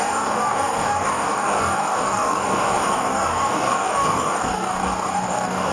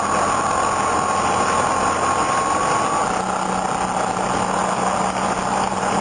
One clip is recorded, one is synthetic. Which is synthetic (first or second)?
first